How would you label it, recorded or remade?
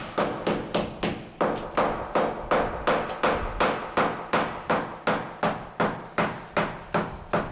recorded